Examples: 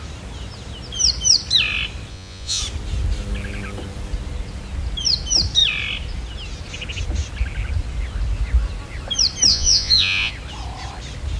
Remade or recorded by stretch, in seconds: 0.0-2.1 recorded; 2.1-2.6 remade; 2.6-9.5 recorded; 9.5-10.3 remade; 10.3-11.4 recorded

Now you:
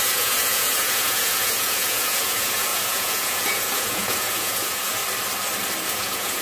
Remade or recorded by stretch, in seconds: 0.0-5.0 remade; 5.0-5.9 recorded; 5.9-6.4 remade

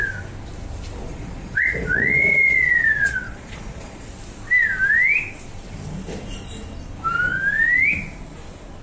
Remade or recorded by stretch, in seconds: 0.0-1.1 recorded; 1.1-4.1 remade; 4.1-8.8 recorded

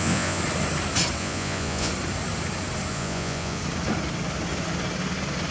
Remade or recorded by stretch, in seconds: 0.0-0.4 remade; 0.4-1.2 recorded; 1.2-1.9 remade; 1.9-2.9 recorded; 2.9-3.6 remade; 3.6-5.5 recorded

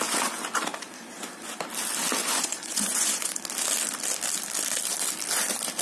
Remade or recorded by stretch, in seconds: 0.0-2.2 recorded; 2.2-3.4 remade; 3.4-5.8 recorded

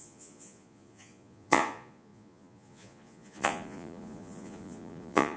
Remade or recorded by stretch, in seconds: 0.0-5.4 remade

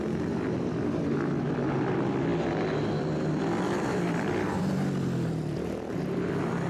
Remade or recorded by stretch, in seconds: 0.0-6.7 recorded

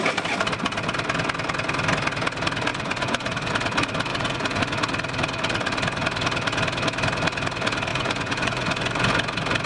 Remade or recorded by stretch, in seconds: 0.0-2.7 recorded; 2.7-3.5 remade; 3.5-4.1 recorded; 4.1-4.6 remade; 4.6-7.9 recorded; 7.9-9.1 remade; 9.1-9.7 recorded